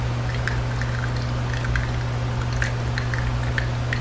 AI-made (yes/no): no